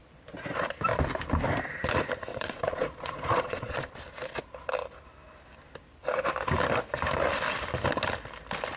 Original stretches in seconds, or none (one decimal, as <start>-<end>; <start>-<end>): 0.0-2.3; 3.9-8.8